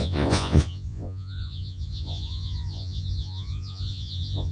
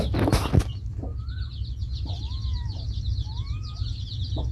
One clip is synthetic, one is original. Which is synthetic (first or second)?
first